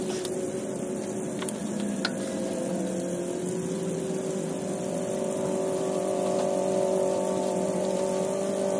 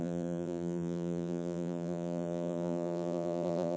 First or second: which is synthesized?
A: second